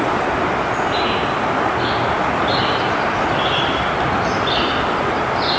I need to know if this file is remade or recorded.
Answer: recorded